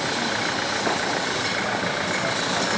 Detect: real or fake real